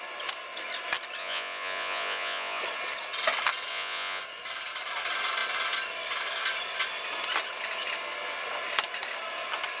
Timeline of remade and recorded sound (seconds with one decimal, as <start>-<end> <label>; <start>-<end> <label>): 0.0-1.2 recorded; 1.2-2.6 remade; 2.6-3.7 recorded; 3.7-4.2 remade; 4.2-9.8 recorded